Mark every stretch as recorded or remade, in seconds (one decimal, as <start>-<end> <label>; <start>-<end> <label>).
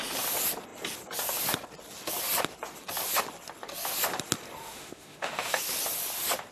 0.0-4.6 recorded; 4.6-5.6 remade; 5.6-6.5 recorded